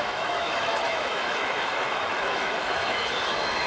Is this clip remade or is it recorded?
remade